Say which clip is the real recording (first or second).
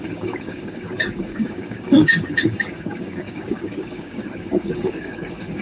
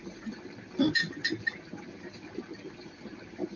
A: second